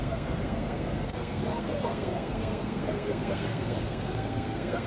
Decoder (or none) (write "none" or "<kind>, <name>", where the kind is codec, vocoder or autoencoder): codec, SNAC